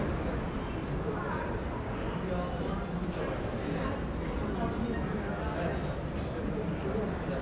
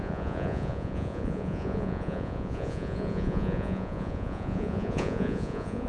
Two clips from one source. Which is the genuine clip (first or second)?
first